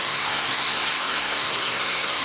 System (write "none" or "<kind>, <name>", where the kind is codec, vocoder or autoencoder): codec, SNAC